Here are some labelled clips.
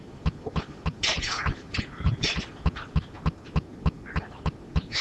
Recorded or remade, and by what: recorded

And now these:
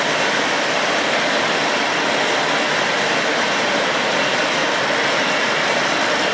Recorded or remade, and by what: remade, vocoder, BigVGAN v2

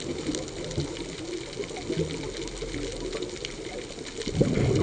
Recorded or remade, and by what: recorded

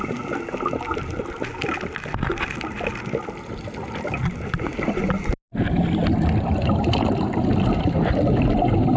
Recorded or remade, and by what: recorded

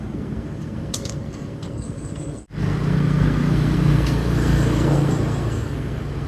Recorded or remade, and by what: remade, codec, SNAC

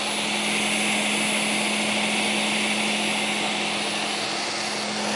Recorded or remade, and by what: recorded